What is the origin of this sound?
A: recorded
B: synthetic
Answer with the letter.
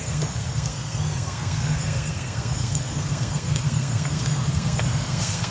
B